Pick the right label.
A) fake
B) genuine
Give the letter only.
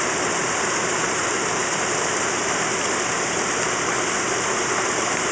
B